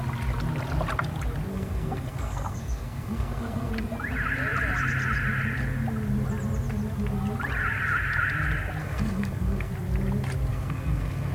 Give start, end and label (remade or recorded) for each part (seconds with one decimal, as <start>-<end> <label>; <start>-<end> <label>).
0.0-1.5 recorded; 1.5-3.7 remade; 3.7-8.8 recorded; 8.8-9.7 remade; 9.7-10.5 recorded; 10.5-11.3 remade